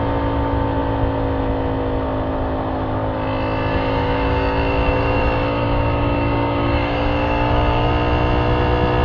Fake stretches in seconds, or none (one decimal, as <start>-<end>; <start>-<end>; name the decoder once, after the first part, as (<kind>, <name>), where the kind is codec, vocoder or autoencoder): 3.7-7.9 (codec, DAC)